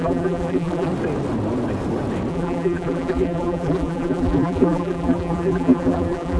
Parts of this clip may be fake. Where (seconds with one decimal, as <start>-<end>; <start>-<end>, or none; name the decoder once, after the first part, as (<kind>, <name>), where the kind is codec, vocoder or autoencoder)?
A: 0.0-0.9 (vocoder, BigVGAN v2); 2.3-6.4